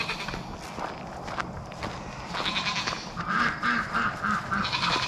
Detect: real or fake real